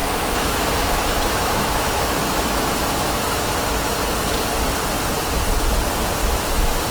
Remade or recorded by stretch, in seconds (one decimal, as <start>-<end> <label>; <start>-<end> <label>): 0.0-3.5 remade; 3.5-6.2 recorded; 6.2-6.9 remade